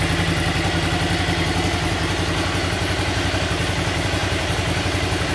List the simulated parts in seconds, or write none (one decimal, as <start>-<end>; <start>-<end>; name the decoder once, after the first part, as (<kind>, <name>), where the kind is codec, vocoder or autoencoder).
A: 4.2-5.3 (vocoder, BigVGAN v2)